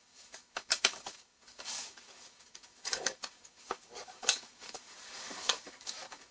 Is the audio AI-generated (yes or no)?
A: yes